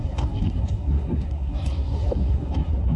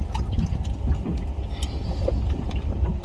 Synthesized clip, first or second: first